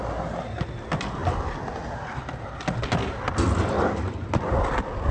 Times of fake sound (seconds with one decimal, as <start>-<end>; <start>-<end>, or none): none